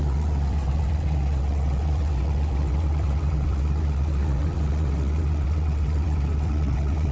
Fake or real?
fake